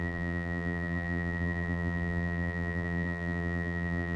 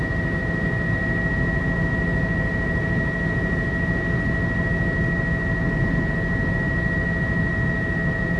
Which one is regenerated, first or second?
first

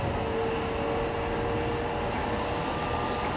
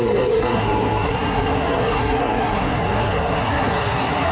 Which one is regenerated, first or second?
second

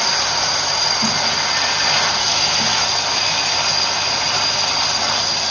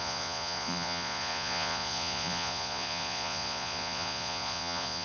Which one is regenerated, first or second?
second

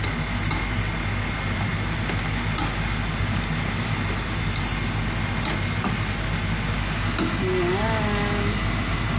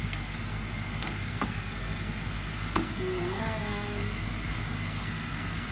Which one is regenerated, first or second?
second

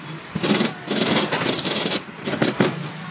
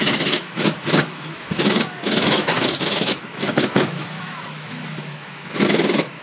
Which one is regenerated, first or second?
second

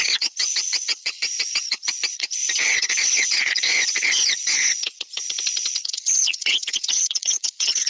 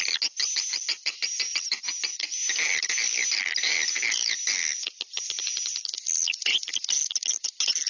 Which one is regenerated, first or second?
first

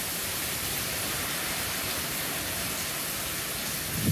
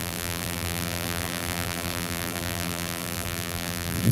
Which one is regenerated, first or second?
second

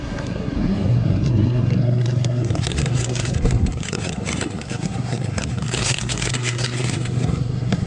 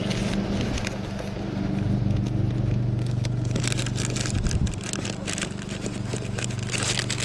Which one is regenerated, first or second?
first